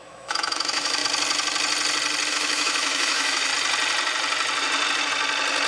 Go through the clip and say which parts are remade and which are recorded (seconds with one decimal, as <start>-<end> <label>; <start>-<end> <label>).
0.0-1.0 remade; 1.0-2.3 recorded; 2.3-3.5 remade; 3.5-5.7 recorded